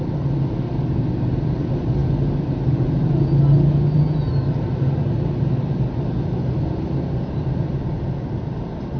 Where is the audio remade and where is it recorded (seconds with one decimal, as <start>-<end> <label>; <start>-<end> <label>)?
0.0-9.0 recorded